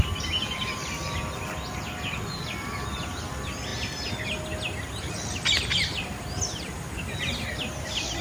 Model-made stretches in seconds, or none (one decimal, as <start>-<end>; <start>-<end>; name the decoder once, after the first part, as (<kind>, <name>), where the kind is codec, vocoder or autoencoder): none